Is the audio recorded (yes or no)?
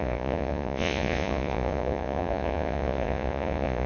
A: no